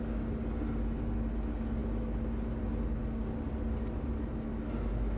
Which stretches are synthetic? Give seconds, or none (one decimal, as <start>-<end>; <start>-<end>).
none